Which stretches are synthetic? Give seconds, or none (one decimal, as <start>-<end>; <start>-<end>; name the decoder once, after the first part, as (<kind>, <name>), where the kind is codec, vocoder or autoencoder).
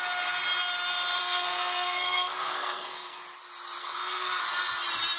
1.2-3.2 (codec, SNAC); 3.8-4.4